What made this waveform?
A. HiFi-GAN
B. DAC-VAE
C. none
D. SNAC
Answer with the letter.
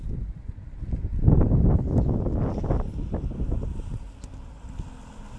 C